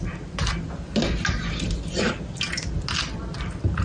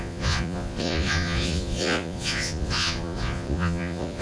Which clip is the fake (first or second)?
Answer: second